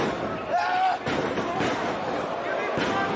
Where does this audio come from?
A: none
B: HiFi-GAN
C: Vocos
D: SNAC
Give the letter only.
A